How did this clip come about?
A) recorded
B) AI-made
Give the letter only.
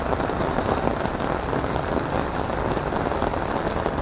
A